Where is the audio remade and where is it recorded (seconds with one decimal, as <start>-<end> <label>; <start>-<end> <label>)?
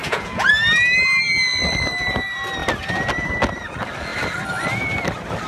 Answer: 0.0-0.5 remade; 0.5-5.5 recorded